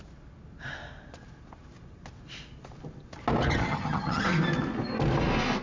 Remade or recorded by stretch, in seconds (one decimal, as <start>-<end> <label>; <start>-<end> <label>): 0.0-3.6 recorded; 3.6-4.2 remade; 4.2-5.6 recorded